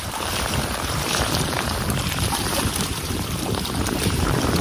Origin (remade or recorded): remade